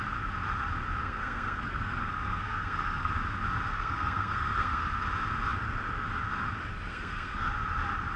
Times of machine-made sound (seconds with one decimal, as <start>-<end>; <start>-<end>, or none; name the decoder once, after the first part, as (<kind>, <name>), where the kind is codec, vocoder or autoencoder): 1.0-3.1 (codec, SNAC); 3.7-5.0; 6.9-7.5